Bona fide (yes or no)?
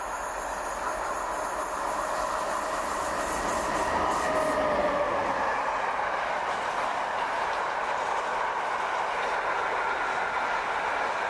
yes